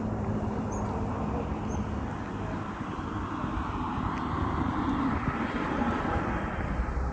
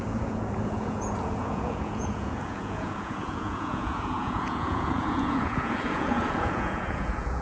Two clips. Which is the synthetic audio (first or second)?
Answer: second